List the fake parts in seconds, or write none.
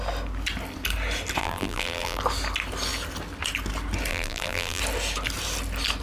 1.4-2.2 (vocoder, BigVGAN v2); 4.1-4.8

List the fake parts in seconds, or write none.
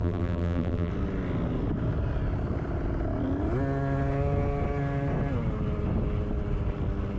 0.0-0.9 (vocoder, BigVGAN v2)